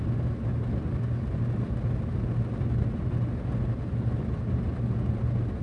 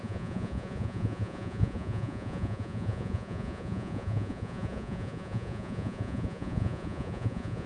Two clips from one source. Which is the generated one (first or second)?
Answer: second